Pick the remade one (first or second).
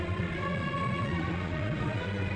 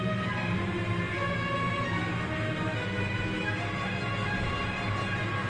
first